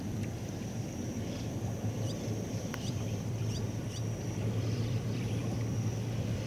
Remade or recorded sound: remade